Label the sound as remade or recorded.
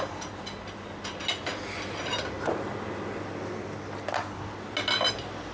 recorded